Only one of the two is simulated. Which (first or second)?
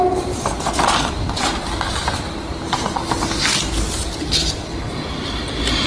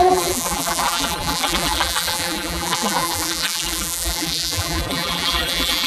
second